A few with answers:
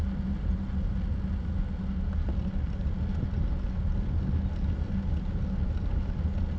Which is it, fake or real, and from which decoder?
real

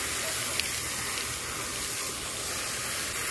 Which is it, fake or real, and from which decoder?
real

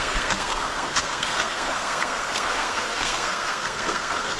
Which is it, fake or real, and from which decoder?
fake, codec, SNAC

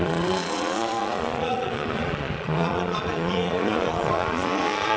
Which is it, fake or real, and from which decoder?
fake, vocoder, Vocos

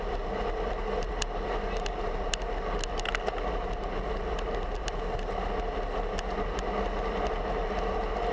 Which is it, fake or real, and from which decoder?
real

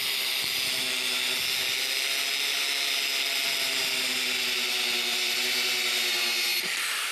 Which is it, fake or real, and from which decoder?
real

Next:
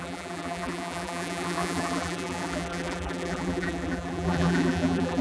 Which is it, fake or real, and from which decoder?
fake, vocoder, BigVGAN v2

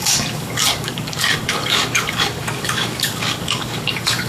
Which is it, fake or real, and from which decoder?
fake, codec, DAC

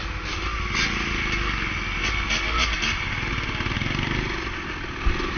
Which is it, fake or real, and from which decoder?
real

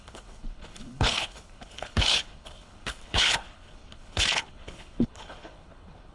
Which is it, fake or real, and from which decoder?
fake, codec, HILCodec